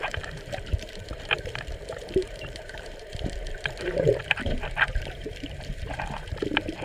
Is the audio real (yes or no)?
no